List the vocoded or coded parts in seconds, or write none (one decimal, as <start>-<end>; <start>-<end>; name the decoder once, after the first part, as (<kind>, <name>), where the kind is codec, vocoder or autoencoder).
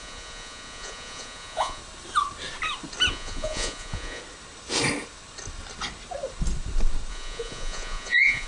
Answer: 0.0-1.8 (vocoder, Vocos); 3.1-4.2; 7.1-8.5